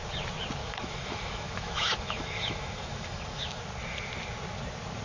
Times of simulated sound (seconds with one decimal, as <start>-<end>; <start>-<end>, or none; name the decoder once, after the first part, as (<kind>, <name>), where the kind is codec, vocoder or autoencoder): 0.6-3.6 (autoencoder, DAC-VAE)